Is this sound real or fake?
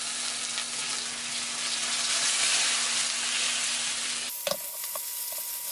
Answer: real